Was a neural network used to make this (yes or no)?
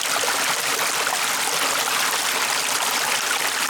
no